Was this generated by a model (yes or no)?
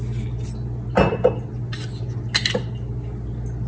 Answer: no